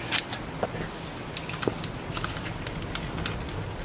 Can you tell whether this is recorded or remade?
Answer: recorded